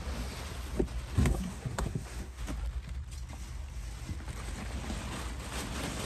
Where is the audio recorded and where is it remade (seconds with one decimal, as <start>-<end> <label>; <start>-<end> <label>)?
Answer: 0.0-1.1 recorded; 1.1-2.4 remade; 2.4-6.1 recorded